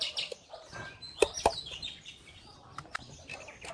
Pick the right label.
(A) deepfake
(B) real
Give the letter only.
B